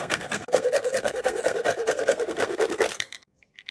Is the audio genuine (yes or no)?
no